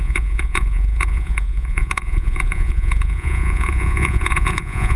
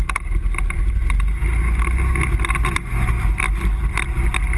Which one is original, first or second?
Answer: second